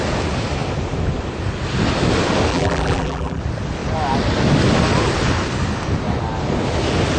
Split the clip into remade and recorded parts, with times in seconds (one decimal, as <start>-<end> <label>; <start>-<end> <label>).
0.0-2.5 recorded; 2.5-3.4 remade; 3.4-7.2 recorded